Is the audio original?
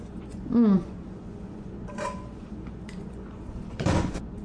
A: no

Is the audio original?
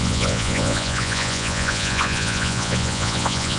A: no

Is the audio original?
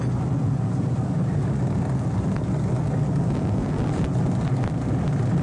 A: yes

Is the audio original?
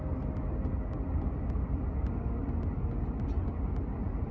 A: yes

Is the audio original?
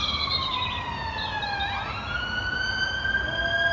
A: yes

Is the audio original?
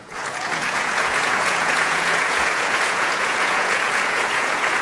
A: no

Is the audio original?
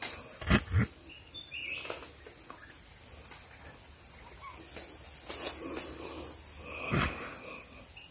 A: yes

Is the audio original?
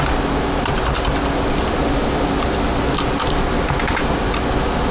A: yes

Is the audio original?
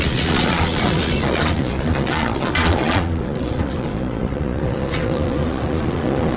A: no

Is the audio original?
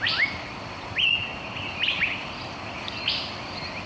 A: yes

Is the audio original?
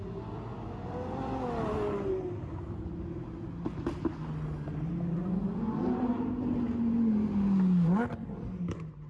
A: yes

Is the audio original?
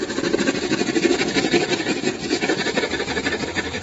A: no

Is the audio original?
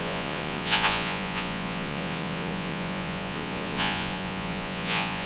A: no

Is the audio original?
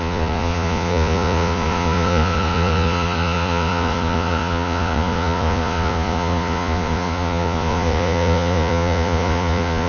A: no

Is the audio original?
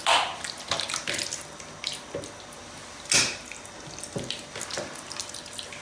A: yes